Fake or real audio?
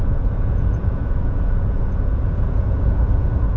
fake